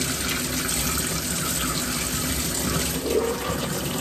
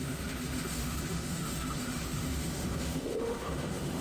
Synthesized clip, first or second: second